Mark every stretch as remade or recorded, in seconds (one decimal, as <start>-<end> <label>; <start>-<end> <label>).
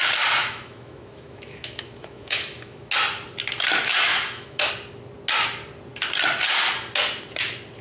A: 0.0-0.4 recorded; 0.4-2.9 remade; 2.9-4.1 recorded; 4.1-4.7 remade; 4.7-7.8 recorded